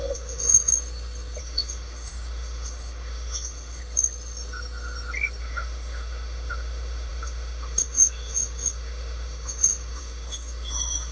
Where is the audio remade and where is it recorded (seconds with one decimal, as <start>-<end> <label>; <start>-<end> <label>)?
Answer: 0.0-0.7 remade; 0.7-1.4 recorded; 1.4-3.8 remade; 3.8-5.4 recorded; 5.4-11.1 remade